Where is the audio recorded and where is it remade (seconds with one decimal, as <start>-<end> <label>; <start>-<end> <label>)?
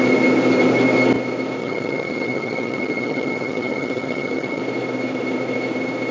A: 0.0-1.6 recorded; 1.6-4.6 remade; 4.6-6.1 recorded